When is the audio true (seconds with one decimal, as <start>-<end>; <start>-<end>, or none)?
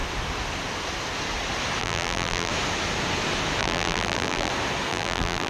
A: 0.0-1.8; 2.5-3.6; 4.5-4.9